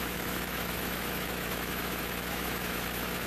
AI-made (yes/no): yes